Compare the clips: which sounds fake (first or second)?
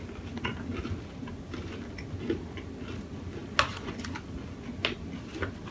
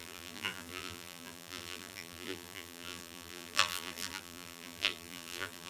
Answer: second